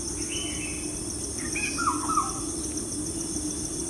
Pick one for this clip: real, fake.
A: real